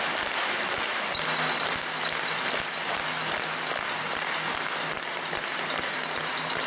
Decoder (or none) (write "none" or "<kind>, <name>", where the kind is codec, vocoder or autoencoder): none